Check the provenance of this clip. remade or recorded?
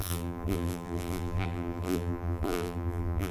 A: remade